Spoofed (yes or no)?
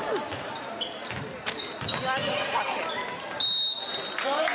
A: no